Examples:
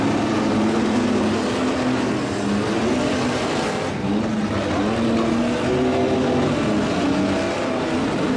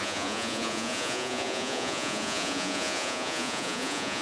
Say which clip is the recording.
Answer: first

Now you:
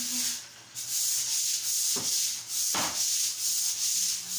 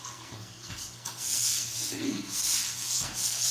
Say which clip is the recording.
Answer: first